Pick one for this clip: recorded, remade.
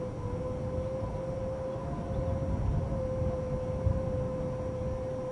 recorded